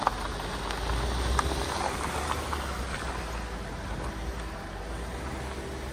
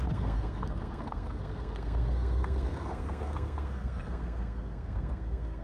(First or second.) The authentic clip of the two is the first